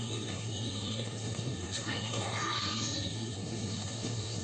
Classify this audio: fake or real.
fake